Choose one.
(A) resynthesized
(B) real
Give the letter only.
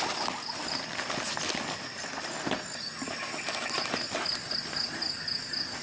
B